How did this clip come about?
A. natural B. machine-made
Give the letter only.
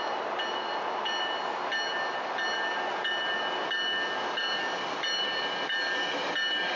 A